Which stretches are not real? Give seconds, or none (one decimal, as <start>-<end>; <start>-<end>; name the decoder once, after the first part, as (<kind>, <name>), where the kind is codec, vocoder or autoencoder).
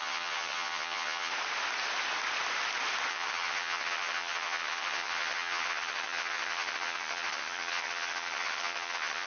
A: 0.0-1.3 (vocoder, HiFi-GAN); 3.1-9.3